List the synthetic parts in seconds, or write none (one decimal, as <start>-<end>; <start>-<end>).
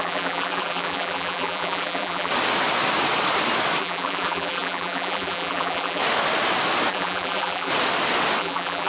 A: 0.0-2.3; 3.8-6.0; 6.9-7.7; 8.4-8.9